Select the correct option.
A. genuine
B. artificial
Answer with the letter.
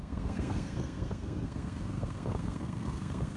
B